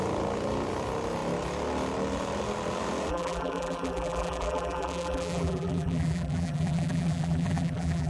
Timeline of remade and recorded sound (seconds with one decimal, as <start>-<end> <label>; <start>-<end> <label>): 0.0-3.1 recorded; 3.1-8.1 remade